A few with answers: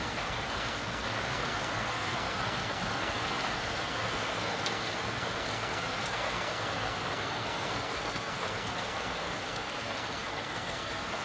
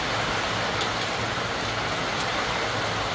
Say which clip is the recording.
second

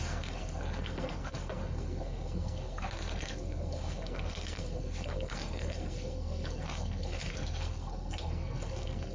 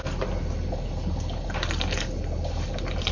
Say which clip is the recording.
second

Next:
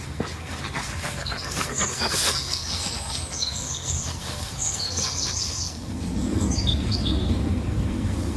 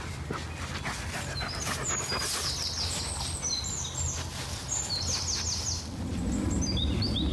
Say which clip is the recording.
second